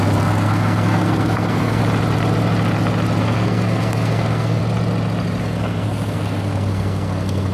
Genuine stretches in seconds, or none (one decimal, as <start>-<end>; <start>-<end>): 1.8-3.2; 4.6-5.4